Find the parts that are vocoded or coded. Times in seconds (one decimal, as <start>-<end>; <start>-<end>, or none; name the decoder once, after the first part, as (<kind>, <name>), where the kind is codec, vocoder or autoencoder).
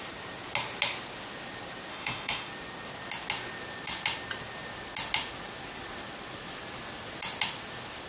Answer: 1.9-2.5 (autoencoder, DAC-VAE)